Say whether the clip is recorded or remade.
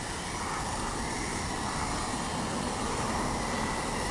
recorded